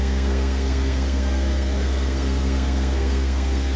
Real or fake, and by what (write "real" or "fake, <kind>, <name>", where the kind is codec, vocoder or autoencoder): fake, codec, SNAC